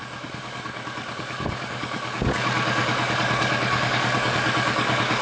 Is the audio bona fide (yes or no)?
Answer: no